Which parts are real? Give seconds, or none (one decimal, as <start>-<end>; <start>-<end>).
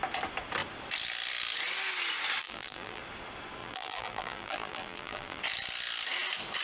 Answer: 0.0-2.4; 3.0-3.6; 5.4-6.6